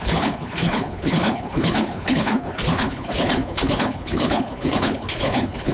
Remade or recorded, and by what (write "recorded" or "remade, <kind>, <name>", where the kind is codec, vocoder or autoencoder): remade, codec, HILCodec